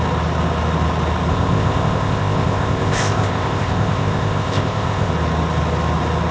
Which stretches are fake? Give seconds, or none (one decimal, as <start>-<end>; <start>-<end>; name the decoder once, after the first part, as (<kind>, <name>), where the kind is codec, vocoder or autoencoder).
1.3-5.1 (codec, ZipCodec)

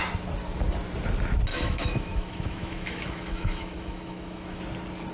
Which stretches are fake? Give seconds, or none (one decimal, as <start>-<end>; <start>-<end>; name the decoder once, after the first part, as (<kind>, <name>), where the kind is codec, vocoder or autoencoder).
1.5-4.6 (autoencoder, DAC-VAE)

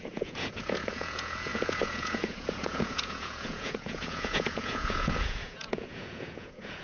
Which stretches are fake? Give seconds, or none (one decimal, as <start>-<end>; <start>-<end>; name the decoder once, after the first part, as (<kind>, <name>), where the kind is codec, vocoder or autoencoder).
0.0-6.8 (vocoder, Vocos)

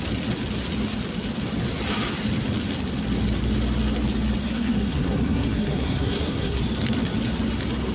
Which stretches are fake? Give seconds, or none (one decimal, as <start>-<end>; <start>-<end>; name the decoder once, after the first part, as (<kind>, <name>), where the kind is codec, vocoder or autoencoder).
4.4-6.6 (codec, SNAC)

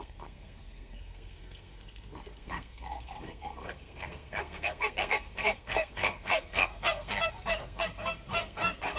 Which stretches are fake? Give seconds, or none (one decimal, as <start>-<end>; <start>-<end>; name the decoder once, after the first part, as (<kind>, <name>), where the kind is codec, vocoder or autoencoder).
0.0-9.0 (codec, SNAC)

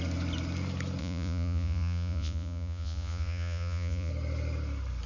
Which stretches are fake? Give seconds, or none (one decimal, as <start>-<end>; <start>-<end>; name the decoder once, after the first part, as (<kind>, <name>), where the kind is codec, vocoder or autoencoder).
1.0-4.1 (vocoder, Vocos)